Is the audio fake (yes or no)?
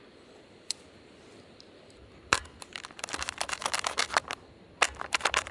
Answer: yes